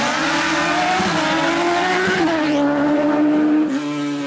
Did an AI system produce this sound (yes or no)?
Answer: no